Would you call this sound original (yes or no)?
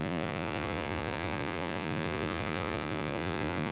no